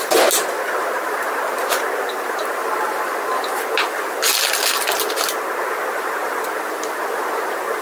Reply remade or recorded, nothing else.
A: recorded